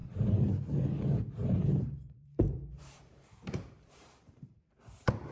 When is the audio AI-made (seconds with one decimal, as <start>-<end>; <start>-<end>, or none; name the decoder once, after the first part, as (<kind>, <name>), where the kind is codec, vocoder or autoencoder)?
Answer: 0.0-0.5 (vocoder, BigVGAN v2); 1.4-4.6